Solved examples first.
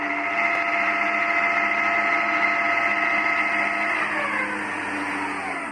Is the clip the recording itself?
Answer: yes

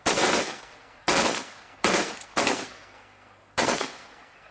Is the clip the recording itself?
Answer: no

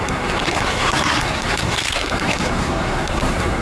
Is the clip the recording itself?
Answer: no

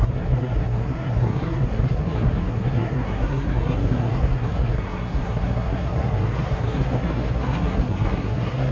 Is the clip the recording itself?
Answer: no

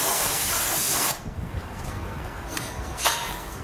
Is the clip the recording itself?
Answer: no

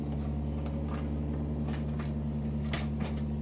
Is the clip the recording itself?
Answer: yes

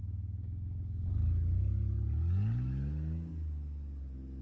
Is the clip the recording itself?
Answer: yes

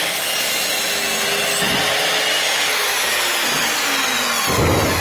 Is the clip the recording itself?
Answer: yes